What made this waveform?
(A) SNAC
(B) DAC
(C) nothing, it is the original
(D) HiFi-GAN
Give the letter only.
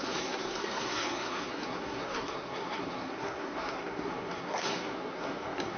A